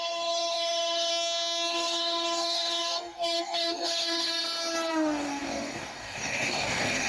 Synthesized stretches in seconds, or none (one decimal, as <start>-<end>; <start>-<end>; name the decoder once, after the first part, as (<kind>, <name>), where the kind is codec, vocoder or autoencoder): 0.0-1.1 (codec, DAC); 1.7-4.4; 4.9-7.1